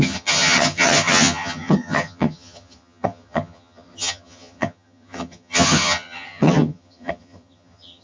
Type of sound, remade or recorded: remade